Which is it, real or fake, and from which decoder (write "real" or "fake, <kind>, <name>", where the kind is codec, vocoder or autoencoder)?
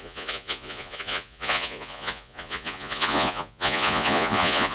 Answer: fake, vocoder, Vocos